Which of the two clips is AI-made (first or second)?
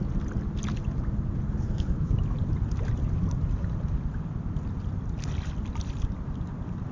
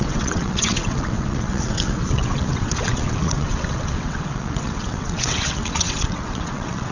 second